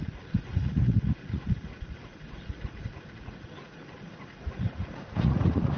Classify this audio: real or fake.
fake